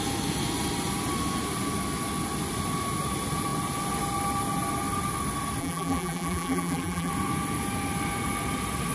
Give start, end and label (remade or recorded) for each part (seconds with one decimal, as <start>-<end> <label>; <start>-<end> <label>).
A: 0.0-5.6 recorded; 5.6-7.1 remade; 7.1-8.9 recorded